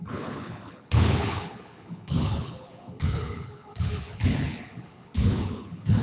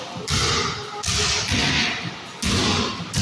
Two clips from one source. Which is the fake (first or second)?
first